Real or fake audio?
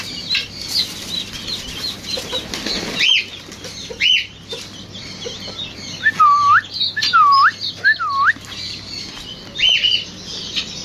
real